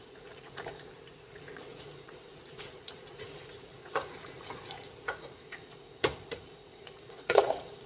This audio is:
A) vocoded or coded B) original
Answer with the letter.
A